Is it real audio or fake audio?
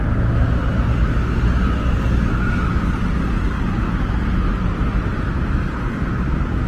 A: real